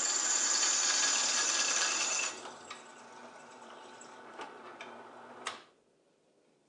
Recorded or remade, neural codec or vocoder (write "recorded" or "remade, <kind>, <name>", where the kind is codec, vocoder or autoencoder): remade, vocoder, BigVGAN v2